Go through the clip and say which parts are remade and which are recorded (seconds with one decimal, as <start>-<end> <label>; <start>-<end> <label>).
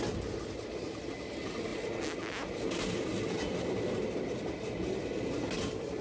0.0-6.0 recorded